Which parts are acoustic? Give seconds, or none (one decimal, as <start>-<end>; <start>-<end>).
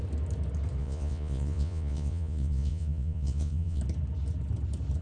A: 0.0-0.8; 3.8-5.0